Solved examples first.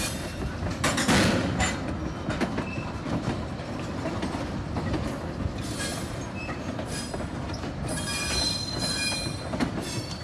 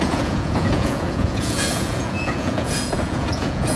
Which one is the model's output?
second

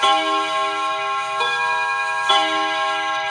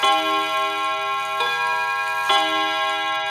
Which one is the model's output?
first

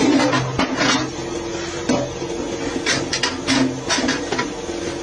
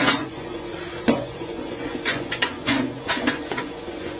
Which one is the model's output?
second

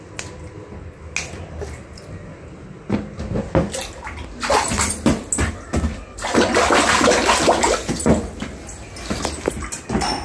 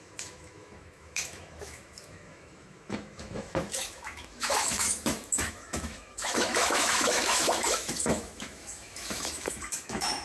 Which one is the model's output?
second